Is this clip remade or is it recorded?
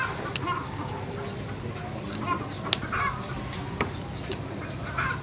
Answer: recorded